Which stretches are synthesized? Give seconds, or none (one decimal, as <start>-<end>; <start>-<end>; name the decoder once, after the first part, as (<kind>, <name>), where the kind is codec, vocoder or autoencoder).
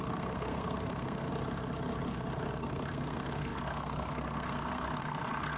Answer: 0.0-1.3 (codec, SNAC); 2.5-5.6